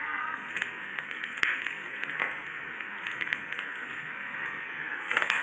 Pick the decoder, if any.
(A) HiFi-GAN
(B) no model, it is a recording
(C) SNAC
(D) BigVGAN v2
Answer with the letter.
C